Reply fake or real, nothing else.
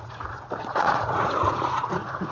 fake